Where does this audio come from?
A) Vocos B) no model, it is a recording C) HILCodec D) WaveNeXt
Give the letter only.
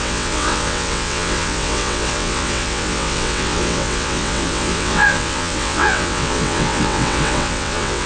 D